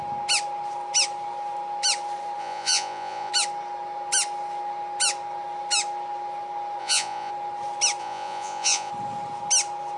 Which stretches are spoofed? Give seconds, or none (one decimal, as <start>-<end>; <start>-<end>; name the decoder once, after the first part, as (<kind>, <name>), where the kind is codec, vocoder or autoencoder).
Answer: 2.4-3.3 (vocoder, Vocos); 6.8-7.3; 8.0-8.9